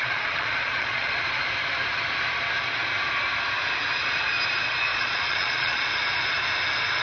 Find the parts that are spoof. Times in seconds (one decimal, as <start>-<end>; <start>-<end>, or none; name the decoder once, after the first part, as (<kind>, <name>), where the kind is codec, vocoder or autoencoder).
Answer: 0.0-1.4 (vocoder, Vocos); 4.9-5.9